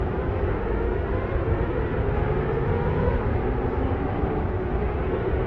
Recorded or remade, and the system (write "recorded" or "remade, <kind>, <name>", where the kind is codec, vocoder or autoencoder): recorded